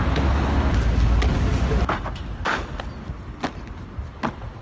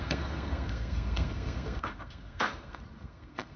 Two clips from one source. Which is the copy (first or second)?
second